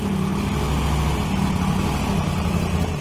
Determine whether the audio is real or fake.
real